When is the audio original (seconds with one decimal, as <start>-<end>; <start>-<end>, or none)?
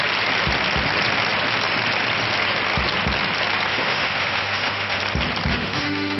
0.0-3.7; 5.0-5.5